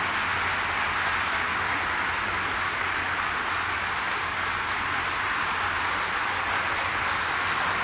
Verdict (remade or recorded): recorded